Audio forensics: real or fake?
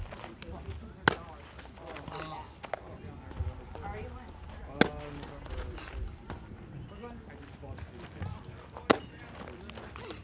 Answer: real